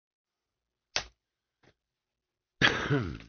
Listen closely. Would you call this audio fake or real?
real